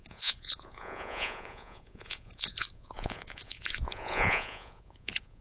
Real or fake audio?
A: fake